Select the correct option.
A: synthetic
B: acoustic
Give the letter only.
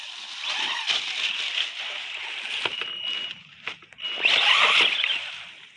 B